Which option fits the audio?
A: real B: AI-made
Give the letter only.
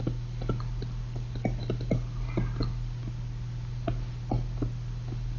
A